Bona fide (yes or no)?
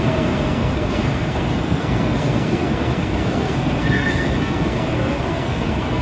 no